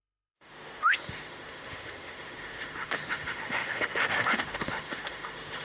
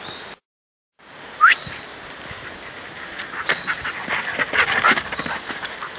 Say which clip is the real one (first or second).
second